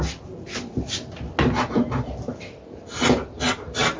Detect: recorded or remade recorded